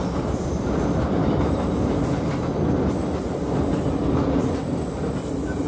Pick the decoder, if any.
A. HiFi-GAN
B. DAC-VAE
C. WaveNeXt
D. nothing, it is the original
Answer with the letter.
D